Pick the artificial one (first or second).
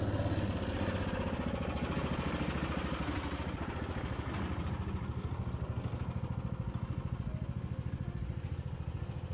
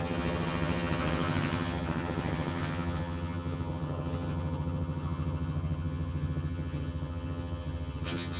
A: second